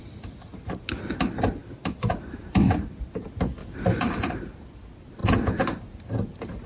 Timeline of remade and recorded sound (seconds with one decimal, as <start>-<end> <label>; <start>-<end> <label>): 0.0-1.6 recorded; 1.6-3.2 remade; 3.2-3.6 recorded; 3.6-4.6 remade; 4.6-5.2 recorded; 5.2-5.8 remade; 5.8-6.7 recorded